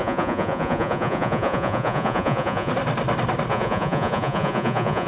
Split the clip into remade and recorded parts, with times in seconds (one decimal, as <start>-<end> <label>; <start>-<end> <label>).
0.0-2.7 remade; 2.7-3.5 recorded; 3.5-5.1 remade